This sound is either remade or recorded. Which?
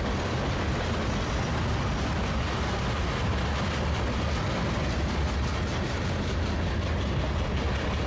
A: recorded